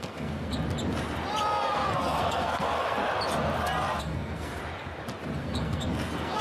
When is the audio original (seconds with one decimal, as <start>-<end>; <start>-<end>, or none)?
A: 0.5-1.7; 3.0-4.0; 4.6-5.4